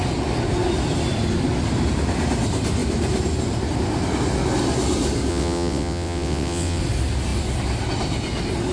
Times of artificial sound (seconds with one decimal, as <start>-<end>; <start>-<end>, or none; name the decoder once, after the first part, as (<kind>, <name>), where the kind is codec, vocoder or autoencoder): 5.3-6.8 (vocoder, WaveNeXt)